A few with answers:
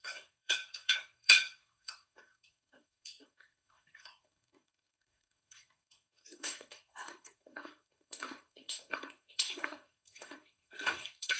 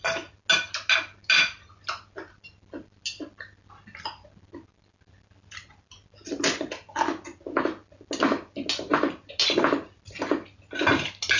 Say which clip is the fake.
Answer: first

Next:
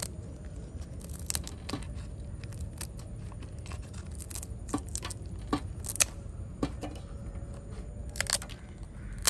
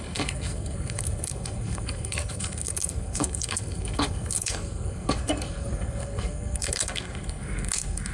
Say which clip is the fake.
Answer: second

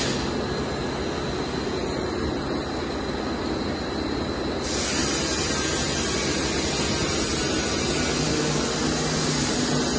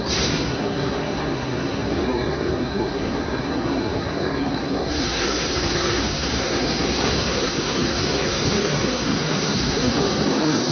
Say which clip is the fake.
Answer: second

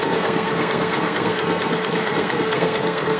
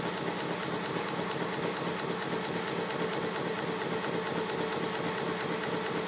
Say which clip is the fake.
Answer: first